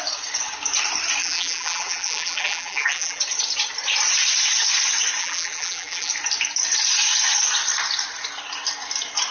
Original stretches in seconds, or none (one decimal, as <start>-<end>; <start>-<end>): 0.0-1.2; 3.2-5.2; 6.1-9.3